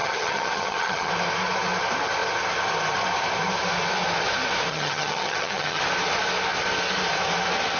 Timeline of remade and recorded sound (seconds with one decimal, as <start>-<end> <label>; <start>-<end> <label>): 0.0-1.1 remade; 1.1-4.7 recorded; 4.7-5.8 remade; 5.8-7.8 recorded